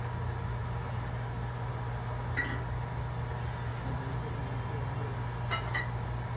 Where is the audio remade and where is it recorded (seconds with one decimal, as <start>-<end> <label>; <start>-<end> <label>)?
0.0-3.7 recorded; 3.7-4.4 remade; 4.4-6.4 recorded